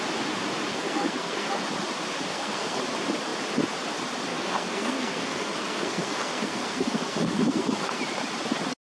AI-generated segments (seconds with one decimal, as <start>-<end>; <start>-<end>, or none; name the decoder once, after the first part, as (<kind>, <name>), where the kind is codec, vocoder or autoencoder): 0.7-1.6 (codec, SNAC); 2.3-2.8; 4.3-8.0